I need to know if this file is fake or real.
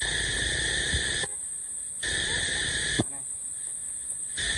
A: real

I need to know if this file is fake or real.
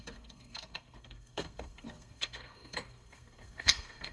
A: fake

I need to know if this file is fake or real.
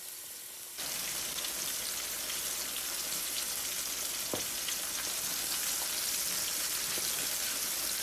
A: real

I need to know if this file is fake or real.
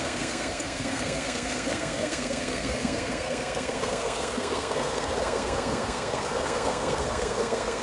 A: fake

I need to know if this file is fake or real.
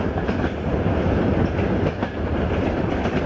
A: real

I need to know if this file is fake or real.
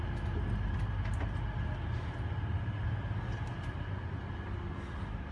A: real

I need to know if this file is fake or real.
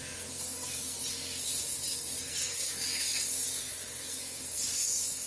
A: fake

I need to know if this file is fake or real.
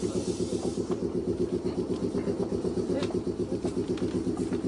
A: real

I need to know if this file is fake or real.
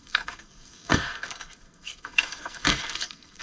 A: fake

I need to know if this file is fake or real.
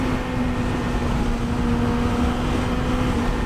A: real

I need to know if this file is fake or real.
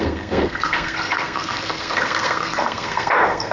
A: fake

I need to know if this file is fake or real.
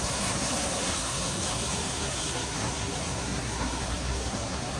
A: fake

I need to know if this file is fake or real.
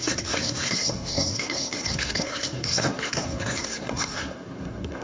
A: fake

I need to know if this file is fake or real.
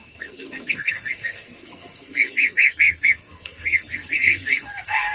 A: fake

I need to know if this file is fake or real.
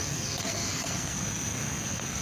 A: fake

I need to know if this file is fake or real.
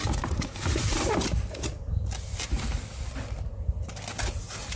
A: real